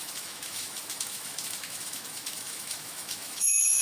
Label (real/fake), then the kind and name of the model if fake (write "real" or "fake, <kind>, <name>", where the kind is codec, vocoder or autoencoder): fake, autoencoder, DAC-VAE